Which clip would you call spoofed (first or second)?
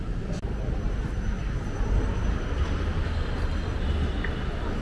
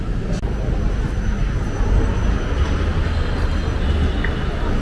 first